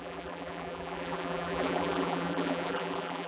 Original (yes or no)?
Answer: no